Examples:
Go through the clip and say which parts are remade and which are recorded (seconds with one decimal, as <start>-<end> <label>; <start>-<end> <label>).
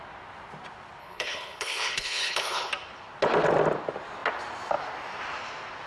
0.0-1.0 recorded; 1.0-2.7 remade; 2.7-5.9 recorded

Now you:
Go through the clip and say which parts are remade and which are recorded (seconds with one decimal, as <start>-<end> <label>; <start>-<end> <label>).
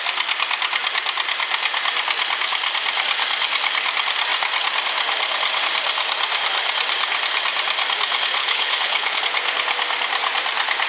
0.0-8.4 recorded; 8.4-9.2 remade; 9.2-10.9 recorded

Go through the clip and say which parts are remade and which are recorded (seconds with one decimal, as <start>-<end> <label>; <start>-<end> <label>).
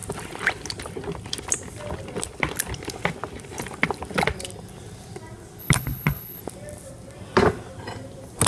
0.0-5.6 recorded; 5.6-6.4 remade; 6.4-8.5 recorded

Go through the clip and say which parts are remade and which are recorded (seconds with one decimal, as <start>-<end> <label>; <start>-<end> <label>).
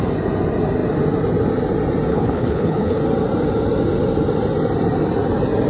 0.0-2.1 recorded; 2.1-3.0 remade; 3.0-5.7 recorded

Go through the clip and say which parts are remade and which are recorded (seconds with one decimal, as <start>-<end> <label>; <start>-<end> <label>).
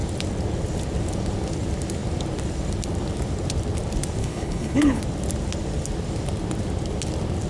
0.0-4.2 recorded; 4.2-5.0 remade; 5.0-7.5 recorded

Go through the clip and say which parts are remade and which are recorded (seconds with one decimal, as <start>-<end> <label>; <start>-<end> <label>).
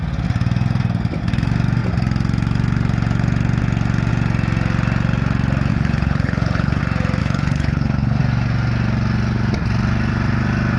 0.0-5.7 recorded; 5.7-6.8 remade; 6.8-7.2 recorded; 7.2-8.2 remade; 8.2-10.8 recorded